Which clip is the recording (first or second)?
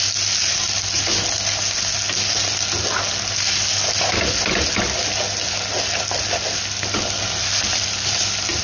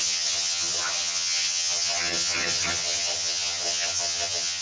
first